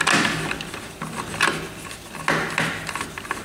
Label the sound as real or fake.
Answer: real